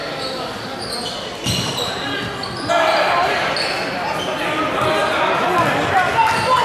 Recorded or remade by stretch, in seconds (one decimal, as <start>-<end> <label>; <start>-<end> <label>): 0.0-6.6 recorded